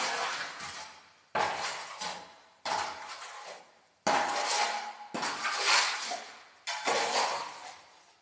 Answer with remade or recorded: recorded